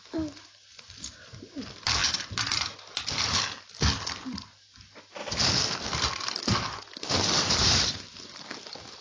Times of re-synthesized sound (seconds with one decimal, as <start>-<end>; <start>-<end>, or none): none